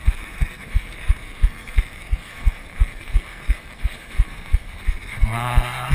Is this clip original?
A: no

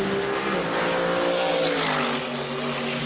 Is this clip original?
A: yes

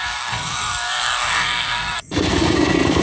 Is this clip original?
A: no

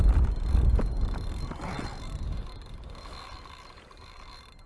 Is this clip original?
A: yes